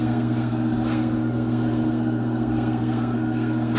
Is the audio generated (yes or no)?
yes